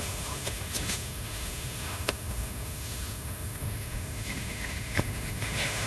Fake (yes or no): yes